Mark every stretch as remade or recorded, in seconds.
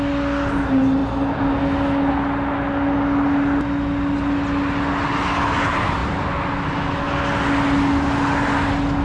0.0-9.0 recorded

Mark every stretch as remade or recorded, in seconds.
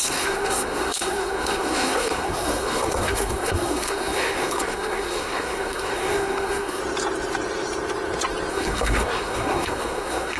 0.0-6.8 remade; 6.8-8.5 recorded; 8.5-10.4 remade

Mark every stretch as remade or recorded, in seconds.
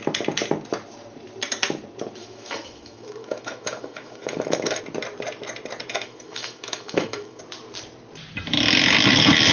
0.0-2.2 recorded; 2.2-4.8 remade; 4.8-5.9 recorded; 5.9-7.4 remade; 7.4-9.5 recorded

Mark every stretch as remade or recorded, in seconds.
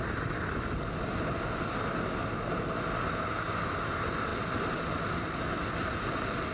0.0-6.5 recorded